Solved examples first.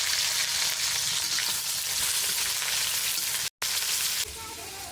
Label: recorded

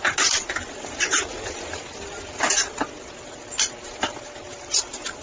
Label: recorded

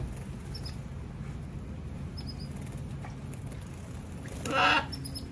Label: recorded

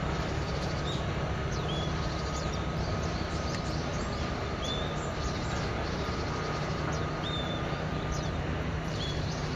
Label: remade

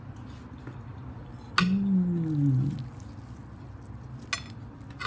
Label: recorded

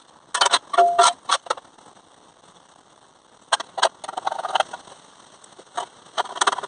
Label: recorded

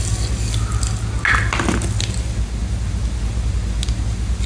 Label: recorded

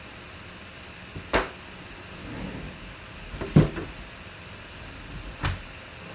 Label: recorded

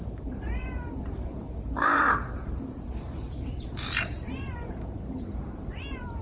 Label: remade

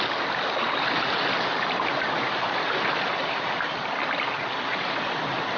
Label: recorded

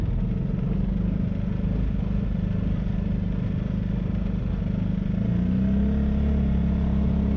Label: recorded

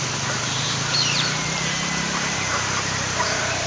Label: remade